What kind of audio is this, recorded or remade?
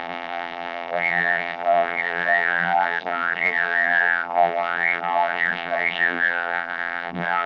remade